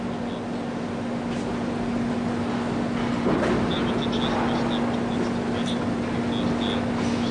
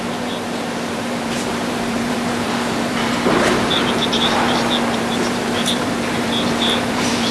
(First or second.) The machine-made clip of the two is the second